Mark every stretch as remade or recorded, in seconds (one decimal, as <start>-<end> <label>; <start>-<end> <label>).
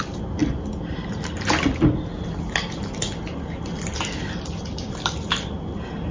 0.0-6.1 recorded